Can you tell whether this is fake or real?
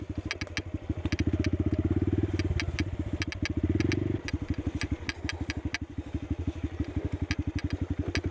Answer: real